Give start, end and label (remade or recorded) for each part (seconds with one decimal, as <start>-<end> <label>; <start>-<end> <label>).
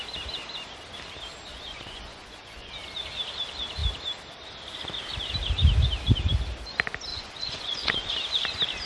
0.0-1.5 recorded; 1.5-2.7 remade; 2.7-7.1 recorded; 7.1-8.1 remade; 8.1-8.9 recorded